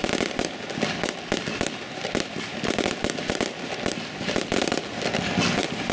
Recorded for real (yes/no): yes